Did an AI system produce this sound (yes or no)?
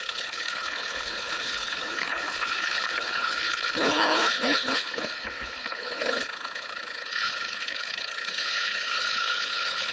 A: yes